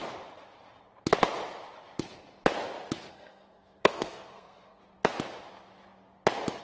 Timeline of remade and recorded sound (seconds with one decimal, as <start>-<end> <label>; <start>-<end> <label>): 0.0-3.1 recorded; 3.1-4.8 remade; 4.8-6.6 recorded